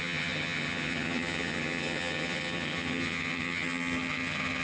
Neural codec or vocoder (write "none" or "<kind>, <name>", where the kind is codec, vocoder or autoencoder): vocoder, HiFi-GAN